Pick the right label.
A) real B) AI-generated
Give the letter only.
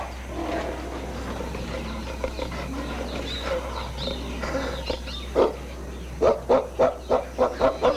A